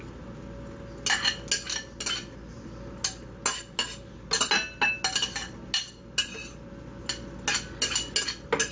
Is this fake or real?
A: real